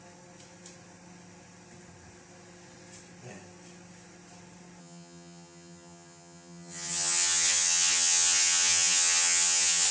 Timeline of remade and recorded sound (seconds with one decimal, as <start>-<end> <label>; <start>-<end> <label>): 0.0-4.8 recorded; 4.8-9.9 remade